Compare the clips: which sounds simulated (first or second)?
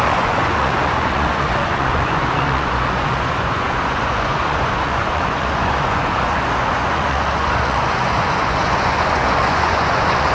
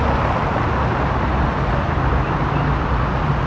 first